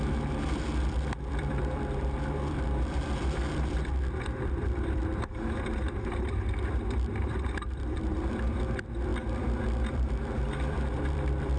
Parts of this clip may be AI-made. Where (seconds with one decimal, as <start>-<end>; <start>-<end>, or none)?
0.0-11.6